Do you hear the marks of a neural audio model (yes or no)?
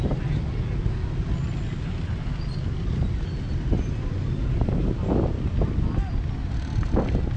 no